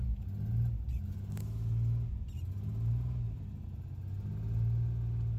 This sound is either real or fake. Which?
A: real